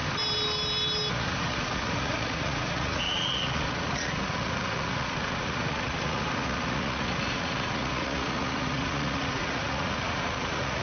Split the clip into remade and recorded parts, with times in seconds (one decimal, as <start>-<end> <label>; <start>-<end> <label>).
0.0-1.1 recorded; 1.1-10.8 remade